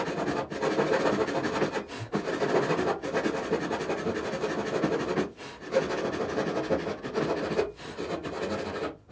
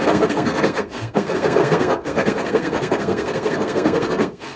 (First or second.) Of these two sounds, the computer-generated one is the second